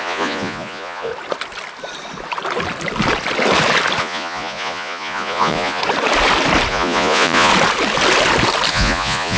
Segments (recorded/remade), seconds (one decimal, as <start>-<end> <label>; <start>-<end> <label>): 0.0-1.1 remade; 1.1-4.0 recorded; 4.0-5.8 remade; 5.8-6.7 recorded; 6.7-7.5 remade; 7.5-8.7 recorded; 8.7-9.4 remade